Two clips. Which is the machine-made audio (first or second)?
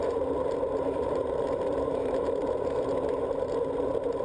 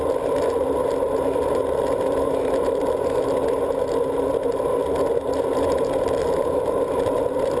first